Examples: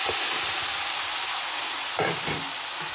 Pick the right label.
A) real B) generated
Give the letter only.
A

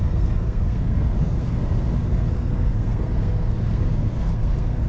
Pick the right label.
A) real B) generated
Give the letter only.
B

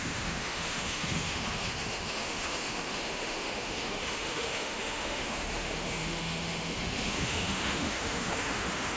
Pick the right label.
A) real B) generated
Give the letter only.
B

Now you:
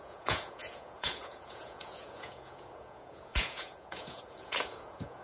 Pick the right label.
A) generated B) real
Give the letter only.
A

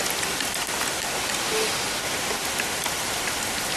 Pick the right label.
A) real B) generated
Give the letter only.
A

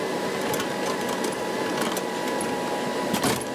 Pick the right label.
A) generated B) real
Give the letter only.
B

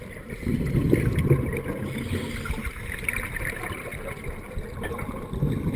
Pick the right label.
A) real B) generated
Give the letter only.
A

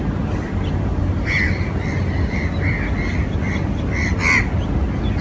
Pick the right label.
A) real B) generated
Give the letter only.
A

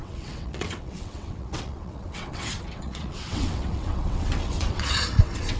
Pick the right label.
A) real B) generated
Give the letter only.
B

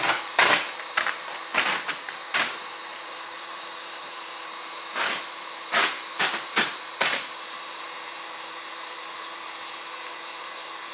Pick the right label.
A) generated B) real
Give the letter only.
A